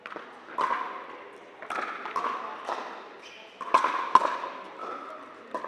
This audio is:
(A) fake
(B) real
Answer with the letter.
B